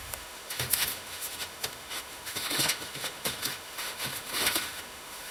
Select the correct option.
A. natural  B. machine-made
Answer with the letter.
B